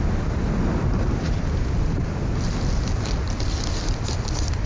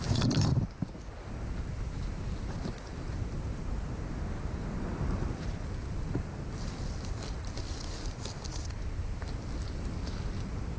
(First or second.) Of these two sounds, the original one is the first